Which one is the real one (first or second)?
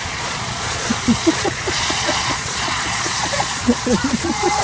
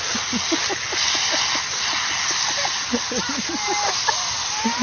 second